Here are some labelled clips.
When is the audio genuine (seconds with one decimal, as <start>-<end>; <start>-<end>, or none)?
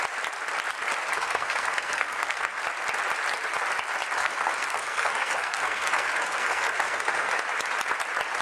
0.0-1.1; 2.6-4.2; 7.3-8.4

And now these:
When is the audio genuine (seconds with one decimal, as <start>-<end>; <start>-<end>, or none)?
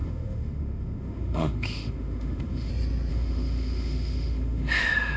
2.7-3.1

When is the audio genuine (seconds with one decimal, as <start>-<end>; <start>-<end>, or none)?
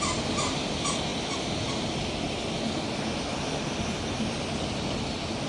0.0-5.5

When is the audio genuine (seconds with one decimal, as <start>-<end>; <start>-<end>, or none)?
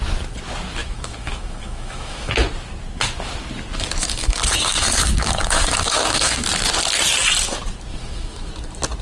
0.0-0.8; 2.3-4.0; 6.5-7.9; 8.5-9.0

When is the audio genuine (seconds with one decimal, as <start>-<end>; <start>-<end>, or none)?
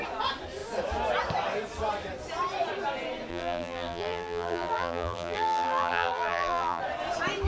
0.0-3.3; 6.8-7.5